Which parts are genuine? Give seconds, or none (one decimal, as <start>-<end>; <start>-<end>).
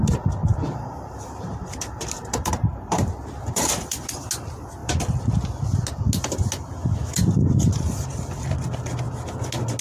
0.0-0.4; 4.1-9.8